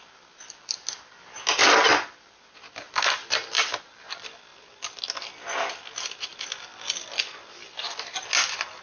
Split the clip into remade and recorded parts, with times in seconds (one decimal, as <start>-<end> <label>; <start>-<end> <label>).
0.0-8.8 recorded